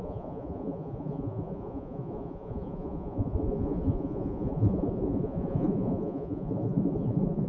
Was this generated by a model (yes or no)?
yes